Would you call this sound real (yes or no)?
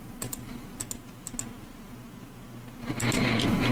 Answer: yes